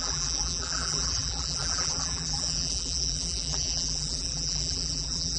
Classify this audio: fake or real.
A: fake